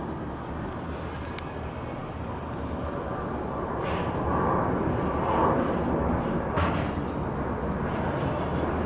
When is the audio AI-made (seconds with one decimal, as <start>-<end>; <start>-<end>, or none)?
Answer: none